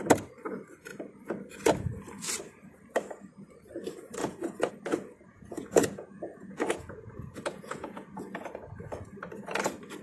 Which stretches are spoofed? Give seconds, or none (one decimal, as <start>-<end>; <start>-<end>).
4.2-4.7; 5.3-8.5